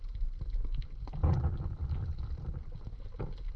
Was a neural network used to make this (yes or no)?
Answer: yes